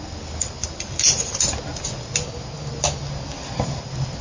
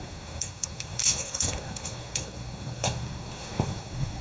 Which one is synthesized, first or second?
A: second